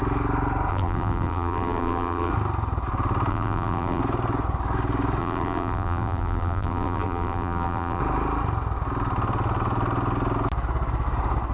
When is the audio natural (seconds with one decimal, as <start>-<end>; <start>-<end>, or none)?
0.0-0.7; 2.3-3.3; 4.0-5.2; 8.0-11.5